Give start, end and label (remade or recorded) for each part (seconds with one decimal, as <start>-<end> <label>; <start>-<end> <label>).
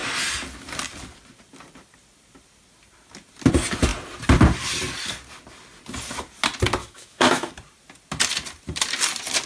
0.0-6.8 recorded; 6.8-7.5 remade; 7.5-9.5 recorded